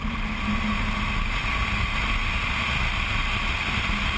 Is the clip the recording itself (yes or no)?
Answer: yes